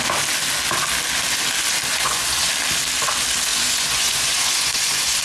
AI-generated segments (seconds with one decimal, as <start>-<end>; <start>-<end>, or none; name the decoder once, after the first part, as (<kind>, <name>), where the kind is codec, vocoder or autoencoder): 1.9-2.5 (vocoder, Vocos); 3.5-5.2